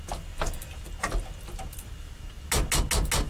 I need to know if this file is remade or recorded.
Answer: recorded